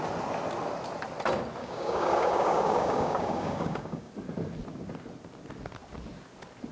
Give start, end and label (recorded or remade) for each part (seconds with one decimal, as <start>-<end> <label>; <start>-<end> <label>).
0.0-1.6 recorded; 1.6-4.1 remade; 4.1-6.7 recorded